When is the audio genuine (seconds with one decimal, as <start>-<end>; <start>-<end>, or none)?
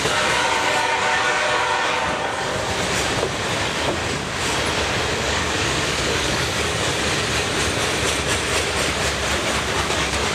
2.5-3.5; 4.0-5.1; 6.9-9.8